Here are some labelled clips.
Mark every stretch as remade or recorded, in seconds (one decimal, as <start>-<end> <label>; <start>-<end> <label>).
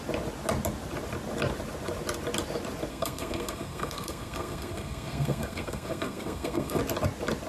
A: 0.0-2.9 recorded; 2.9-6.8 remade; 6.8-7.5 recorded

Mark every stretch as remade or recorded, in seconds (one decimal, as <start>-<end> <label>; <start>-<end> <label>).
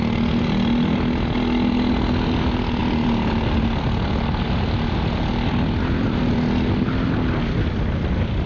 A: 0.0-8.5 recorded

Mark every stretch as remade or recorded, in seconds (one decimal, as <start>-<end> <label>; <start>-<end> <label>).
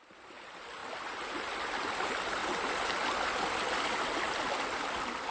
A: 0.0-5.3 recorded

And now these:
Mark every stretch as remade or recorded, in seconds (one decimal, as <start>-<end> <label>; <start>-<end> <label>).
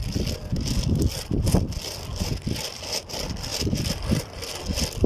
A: 0.0-5.1 recorded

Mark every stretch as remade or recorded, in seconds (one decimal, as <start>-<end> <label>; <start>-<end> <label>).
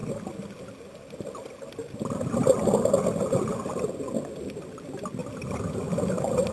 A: 0.0-6.5 recorded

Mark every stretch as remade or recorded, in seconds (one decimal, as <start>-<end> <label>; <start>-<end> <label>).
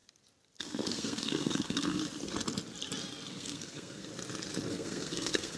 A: 0.0-0.6 recorded; 0.6-2.0 remade; 2.0-3.3 recorded; 3.3-4.1 remade; 4.1-4.7 recorded; 4.7-5.6 remade